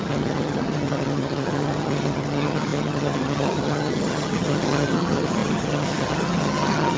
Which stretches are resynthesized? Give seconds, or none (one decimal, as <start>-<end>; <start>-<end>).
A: 0.0-7.0